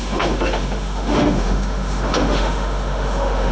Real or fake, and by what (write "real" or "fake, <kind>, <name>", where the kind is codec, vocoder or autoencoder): fake, autoencoder, DAC-VAE